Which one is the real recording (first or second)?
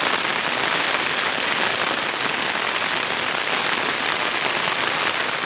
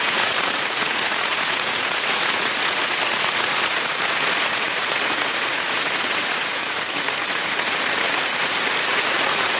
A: first